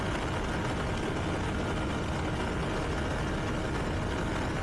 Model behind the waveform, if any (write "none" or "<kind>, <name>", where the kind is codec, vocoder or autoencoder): none